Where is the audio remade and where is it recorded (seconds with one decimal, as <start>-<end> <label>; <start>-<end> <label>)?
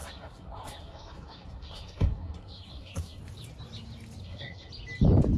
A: 0.0-3.2 remade; 3.2-4.2 recorded; 4.2-4.7 remade; 4.7-5.4 recorded